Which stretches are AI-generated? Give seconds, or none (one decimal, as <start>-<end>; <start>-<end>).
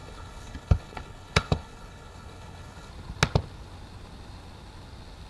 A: 0.0-2.9